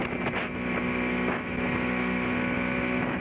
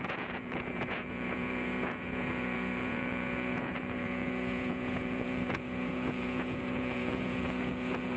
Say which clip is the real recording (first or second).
first